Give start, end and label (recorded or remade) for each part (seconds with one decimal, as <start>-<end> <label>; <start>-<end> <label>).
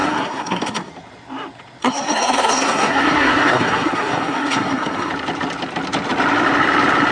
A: 0.0-0.9 remade; 0.9-1.8 recorded; 1.8-5.1 remade; 5.1-7.1 recorded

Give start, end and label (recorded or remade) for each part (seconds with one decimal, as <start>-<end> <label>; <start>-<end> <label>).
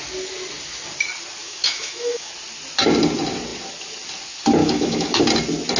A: 0.0-1.4 recorded; 1.4-2.3 remade; 2.3-4.6 recorded; 4.6-5.2 remade; 5.2-5.8 recorded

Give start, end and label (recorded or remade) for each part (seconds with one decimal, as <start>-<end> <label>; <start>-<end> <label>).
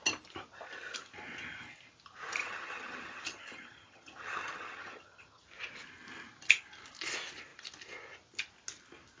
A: 0.0-2.4 recorded; 2.4-5.4 remade; 5.4-9.2 recorded